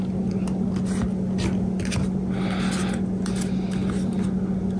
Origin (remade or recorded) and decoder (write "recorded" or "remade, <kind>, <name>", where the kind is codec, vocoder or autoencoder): recorded